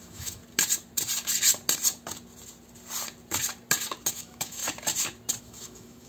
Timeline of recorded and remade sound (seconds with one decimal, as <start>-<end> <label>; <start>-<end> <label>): 0.0-0.4 remade; 0.4-4.1 recorded; 4.1-4.6 remade; 4.6-5.4 recorded; 5.4-6.1 remade